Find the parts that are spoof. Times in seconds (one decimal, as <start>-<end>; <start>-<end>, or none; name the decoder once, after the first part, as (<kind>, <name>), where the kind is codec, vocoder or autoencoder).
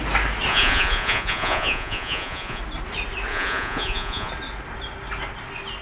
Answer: 0.5-2.6 (vocoder, Vocos); 3.3-4.3